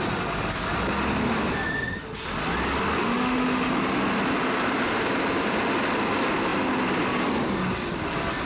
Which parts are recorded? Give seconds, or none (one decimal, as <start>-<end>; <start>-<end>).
0.0-3.0; 3.8-8.5